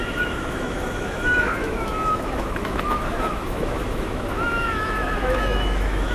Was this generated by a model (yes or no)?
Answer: yes